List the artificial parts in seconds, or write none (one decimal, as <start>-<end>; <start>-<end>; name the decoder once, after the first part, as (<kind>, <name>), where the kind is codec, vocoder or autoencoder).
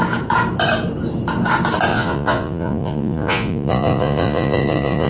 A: 1.9-5.1 (vocoder, Vocos)